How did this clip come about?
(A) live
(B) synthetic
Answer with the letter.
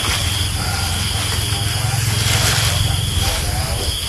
A